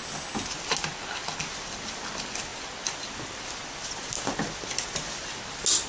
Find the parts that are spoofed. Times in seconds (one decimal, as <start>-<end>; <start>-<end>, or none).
none

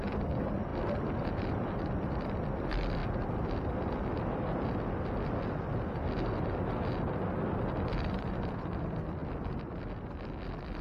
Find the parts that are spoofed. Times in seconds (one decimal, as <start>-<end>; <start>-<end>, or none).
0.0-3.0; 7.9-10.8